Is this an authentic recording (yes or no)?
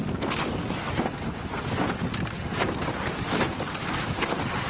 yes